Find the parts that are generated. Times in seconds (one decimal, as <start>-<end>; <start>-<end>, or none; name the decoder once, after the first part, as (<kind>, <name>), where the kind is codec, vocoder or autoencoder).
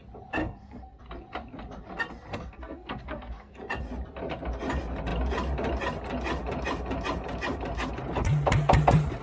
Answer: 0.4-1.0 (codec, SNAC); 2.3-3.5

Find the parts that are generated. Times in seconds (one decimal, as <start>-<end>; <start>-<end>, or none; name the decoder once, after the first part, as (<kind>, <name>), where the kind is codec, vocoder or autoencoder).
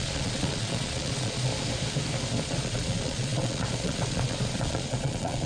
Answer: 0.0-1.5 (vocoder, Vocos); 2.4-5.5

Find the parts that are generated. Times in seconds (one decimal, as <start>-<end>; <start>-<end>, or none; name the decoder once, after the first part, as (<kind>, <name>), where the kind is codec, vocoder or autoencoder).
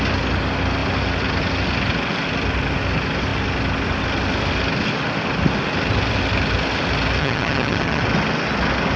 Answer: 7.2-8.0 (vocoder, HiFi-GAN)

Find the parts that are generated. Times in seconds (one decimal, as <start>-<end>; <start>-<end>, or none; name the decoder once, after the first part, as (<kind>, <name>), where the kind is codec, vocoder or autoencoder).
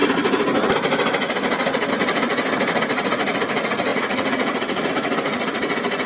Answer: 3.9-4.9 (vocoder, Vocos)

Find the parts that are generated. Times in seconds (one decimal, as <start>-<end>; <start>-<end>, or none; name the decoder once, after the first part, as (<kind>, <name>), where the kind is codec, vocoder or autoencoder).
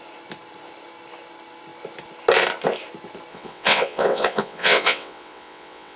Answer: 3.3-6.0 (vocoder, WaveNeXt)